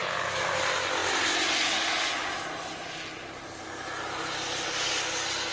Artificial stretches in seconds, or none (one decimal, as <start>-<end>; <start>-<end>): none